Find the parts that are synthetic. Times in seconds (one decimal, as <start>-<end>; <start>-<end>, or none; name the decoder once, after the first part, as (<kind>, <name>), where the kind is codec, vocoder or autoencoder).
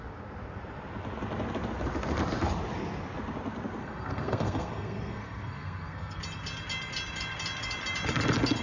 3.8-6.2 (codec, SNAC)